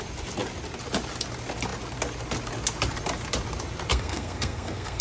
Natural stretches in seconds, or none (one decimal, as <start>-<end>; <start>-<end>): 0.0-3.9